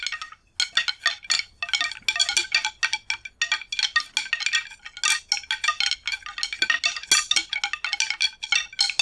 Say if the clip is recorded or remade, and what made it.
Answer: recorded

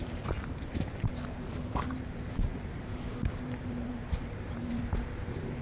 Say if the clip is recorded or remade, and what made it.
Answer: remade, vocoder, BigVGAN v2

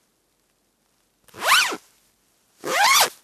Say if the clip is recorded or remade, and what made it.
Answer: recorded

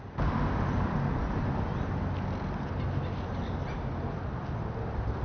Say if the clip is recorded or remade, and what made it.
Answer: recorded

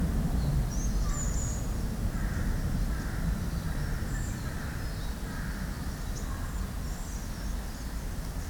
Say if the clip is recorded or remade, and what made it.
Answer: recorded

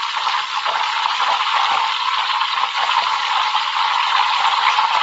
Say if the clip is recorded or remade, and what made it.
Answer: recorded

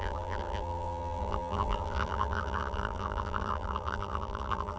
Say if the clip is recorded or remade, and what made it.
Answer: remade, vocoder, BigVGAN v2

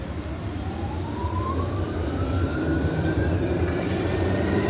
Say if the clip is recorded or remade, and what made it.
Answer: remade, vocoder, BigVGAN v2